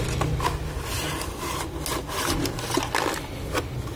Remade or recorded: recorded